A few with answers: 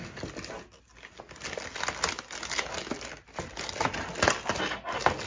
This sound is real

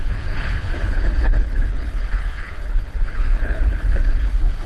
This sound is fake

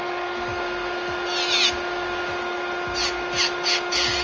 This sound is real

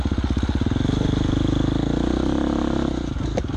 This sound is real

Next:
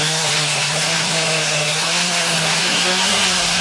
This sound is fake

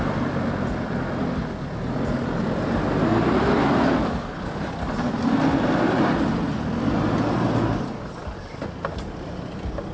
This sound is real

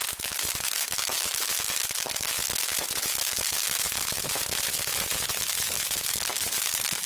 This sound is fake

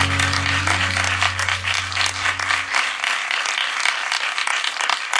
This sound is real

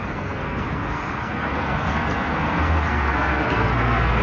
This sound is fake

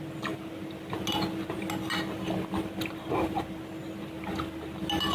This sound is real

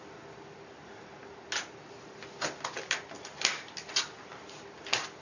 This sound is real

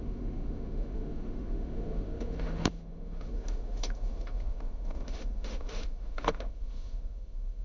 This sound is fake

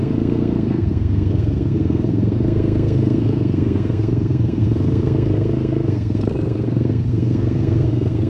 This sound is fake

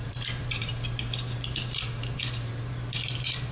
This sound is fake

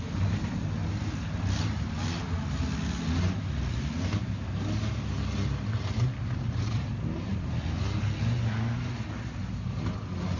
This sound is real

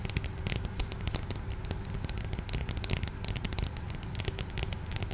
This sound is fake